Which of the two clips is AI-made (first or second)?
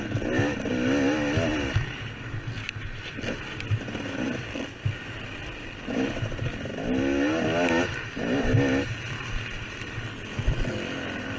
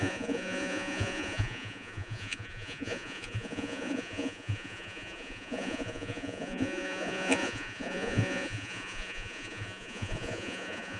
second